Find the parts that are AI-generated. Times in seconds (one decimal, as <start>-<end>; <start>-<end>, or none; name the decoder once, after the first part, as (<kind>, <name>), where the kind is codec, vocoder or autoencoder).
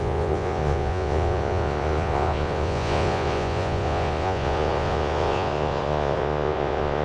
0.0-7.0 (vocoder, Vocos)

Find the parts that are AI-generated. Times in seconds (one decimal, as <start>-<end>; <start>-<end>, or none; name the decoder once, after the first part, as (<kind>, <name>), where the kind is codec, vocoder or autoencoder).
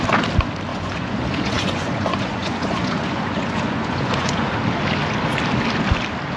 0.7-4.5 (vocoder, Vocos)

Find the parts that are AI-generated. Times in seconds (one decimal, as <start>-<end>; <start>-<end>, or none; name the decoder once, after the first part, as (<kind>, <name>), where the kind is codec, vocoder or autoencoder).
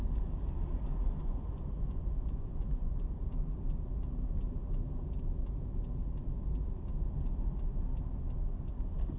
1.2-3.2 (vocoder, Vocos)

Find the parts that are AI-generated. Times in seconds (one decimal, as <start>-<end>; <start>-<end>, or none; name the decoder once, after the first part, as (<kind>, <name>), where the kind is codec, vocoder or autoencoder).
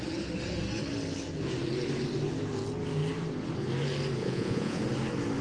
4.2-4.8 (vocoder, Vocos)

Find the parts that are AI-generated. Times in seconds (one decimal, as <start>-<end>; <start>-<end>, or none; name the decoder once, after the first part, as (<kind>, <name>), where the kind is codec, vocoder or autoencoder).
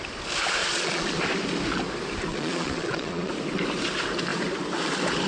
0.6-1.2 (vocoder, Vocos); 2.3-3.3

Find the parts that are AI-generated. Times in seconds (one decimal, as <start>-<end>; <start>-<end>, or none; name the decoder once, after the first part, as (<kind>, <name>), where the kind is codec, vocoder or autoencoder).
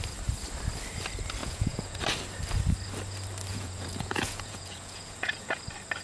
1.4-2.0 (vocoder, Vocos); 3.5-5.6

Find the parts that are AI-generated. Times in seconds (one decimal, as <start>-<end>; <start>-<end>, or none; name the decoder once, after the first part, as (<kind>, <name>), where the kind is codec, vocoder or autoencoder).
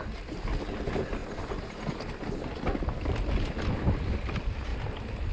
none